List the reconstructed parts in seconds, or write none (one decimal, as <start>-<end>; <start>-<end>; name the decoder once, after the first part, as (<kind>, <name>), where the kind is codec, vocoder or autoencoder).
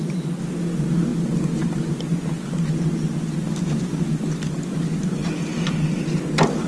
none